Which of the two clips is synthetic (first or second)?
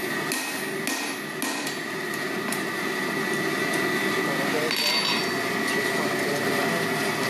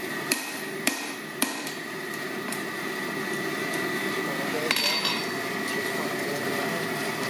second